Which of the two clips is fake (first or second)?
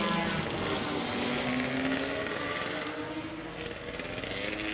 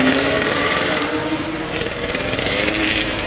second